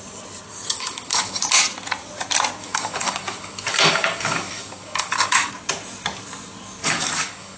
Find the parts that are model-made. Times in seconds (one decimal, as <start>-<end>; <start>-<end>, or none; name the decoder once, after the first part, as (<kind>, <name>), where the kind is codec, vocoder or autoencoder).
0.5-1.4 (codec, DAC); 2.6-5.5; 6.8-7.6